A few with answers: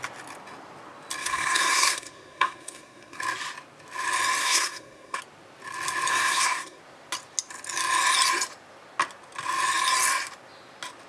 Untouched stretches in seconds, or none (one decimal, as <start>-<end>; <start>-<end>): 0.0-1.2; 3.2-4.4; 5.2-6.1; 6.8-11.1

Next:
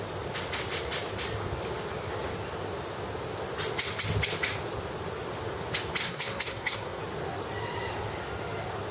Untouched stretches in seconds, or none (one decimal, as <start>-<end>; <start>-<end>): 0.0-6.0; 7.0-8.9

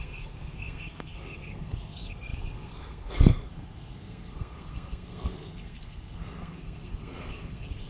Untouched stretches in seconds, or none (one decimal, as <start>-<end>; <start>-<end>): none